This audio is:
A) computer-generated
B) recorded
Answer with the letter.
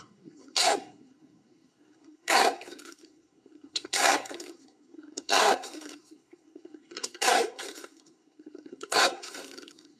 A